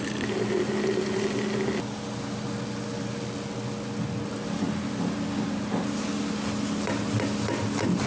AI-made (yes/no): no